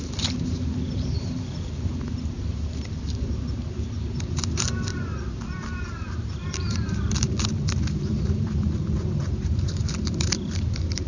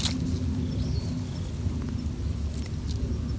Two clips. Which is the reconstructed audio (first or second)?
first